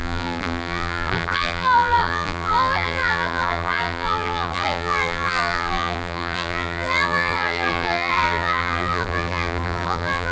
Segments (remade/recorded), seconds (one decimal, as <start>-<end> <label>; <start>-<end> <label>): 0.0-10.3 remade